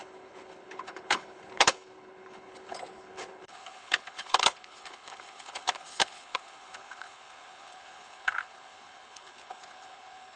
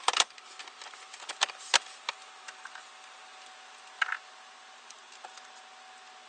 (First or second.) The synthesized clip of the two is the first